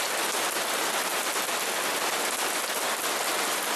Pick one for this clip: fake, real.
real